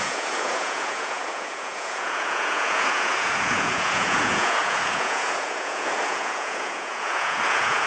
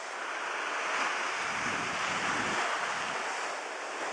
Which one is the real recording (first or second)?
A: second